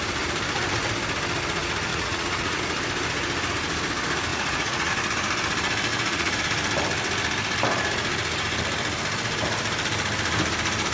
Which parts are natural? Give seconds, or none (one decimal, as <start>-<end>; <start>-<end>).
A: 0.0-1.9; 2.6-4.3; 4.9-5.9; 6.4-10.9

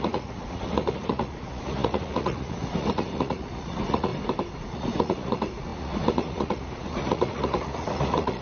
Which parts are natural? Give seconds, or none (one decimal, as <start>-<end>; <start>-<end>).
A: 4.1-4.6

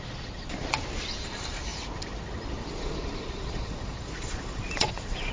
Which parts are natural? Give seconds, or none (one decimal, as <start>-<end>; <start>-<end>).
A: 0.0-2.6

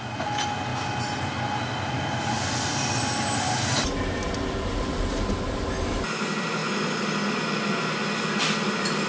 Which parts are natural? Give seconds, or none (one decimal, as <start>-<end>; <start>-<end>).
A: 0.0-9.1

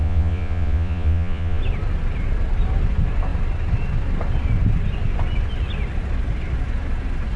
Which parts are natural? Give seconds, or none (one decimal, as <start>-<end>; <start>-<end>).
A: 1.6-7.4

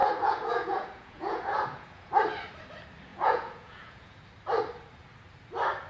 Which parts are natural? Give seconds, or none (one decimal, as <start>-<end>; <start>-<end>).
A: 2.1-3.1; 4.2-5.9

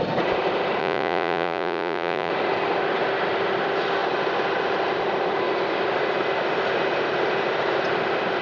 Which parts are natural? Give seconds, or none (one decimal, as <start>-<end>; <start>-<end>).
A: 0.0-0.8; 2.3-8.4